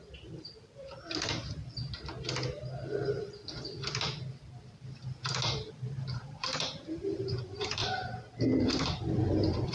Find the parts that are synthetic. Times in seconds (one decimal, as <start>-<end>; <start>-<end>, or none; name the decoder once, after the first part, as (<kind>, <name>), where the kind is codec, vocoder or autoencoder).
0.0-1.6 (vocoder, BigVGAN v2); 5.9-7.8; 8.6-9.7